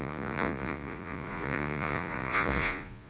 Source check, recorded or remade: remade